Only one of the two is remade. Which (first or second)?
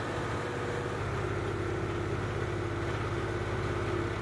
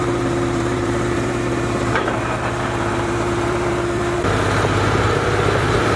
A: second